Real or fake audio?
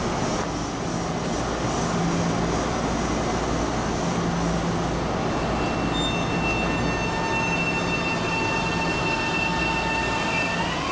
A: real